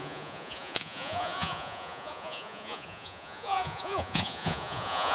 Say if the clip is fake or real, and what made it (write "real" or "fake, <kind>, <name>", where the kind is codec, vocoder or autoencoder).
fake, vocoder, Vocos